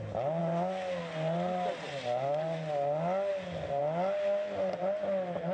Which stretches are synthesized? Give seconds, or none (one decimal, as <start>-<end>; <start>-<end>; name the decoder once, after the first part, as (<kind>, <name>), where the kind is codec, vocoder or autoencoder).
none